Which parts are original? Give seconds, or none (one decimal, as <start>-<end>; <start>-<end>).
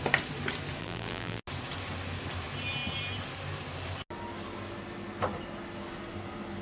0.0-0.8; 1.4-6.6